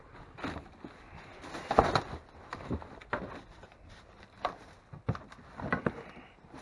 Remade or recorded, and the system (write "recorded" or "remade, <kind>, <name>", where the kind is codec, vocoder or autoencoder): recorded